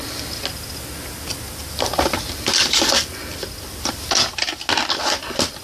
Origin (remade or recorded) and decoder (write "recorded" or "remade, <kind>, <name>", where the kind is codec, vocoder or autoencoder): recorded